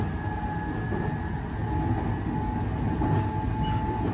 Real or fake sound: real